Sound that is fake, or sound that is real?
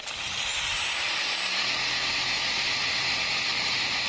real